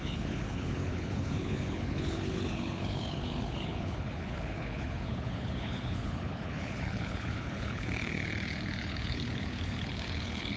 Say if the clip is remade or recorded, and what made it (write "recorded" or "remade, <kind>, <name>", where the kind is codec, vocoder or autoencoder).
remade, codec, HILCodec